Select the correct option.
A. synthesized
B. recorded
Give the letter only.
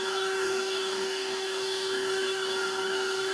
A